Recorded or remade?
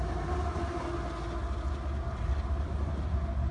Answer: recorded